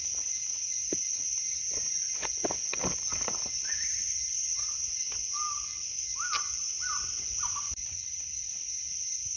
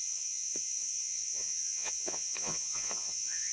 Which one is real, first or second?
first